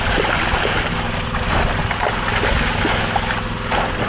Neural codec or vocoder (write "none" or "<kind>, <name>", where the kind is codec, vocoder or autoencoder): none